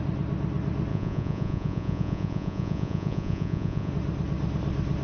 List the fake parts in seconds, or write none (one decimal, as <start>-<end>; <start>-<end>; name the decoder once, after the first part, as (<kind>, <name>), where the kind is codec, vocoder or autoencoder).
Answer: 0.9-3.9 (vocoder, Vocos)